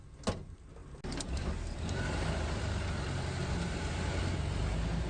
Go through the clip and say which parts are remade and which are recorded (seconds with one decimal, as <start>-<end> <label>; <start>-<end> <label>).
0.0-5.1 recorded